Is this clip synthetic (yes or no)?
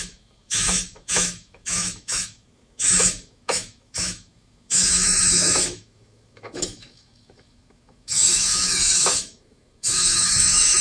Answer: yes